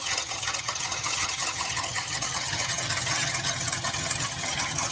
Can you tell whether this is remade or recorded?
remade